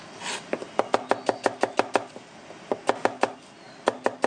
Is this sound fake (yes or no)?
no